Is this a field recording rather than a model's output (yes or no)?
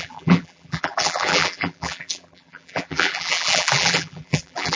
no